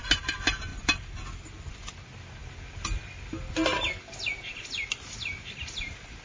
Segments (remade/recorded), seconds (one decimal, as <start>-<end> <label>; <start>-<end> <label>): 0.0-6.2 recorded